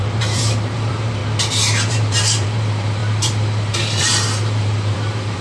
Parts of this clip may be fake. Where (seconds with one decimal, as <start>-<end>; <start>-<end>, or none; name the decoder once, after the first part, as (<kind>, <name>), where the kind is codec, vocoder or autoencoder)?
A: 0.0-1.2 (vocoder, BigVGAN v2); 1.9-5.4